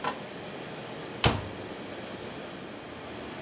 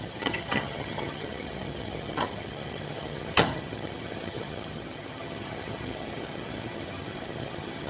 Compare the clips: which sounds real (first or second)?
first